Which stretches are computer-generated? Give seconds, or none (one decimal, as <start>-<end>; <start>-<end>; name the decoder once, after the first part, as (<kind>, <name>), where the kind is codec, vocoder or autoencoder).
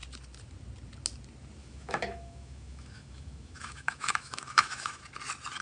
1.6-5.0 (autoencoder, DAC-VAE)